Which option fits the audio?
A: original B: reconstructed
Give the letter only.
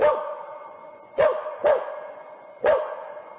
B